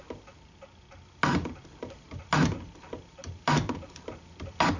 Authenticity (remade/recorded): recorded